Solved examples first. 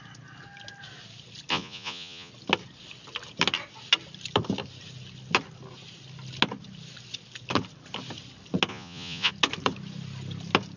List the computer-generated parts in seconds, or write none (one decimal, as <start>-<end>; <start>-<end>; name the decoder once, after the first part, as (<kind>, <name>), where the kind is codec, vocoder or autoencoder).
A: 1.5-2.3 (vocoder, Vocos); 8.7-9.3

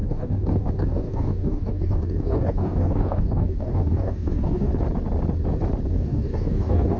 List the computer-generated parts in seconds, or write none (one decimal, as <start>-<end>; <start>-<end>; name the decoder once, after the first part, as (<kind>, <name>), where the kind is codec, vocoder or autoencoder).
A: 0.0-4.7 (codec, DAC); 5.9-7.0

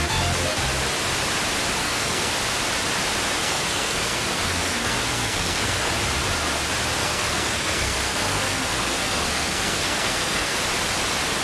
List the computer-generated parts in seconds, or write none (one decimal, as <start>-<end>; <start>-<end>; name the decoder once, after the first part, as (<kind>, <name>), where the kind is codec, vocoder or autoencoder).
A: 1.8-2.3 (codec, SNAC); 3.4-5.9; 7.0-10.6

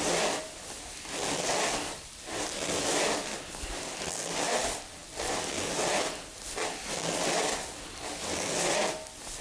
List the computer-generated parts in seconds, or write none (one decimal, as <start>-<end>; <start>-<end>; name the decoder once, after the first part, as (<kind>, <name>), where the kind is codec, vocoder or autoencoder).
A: none